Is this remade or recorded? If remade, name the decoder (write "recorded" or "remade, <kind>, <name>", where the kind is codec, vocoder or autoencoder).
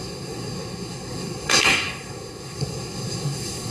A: remade, codec, SNAC